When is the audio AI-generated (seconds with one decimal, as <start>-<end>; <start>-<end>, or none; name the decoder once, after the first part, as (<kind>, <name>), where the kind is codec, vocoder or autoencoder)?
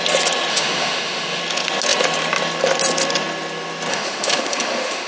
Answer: 0.5-1.4 (autoencoder, DAC-VAE); 3.9-5.1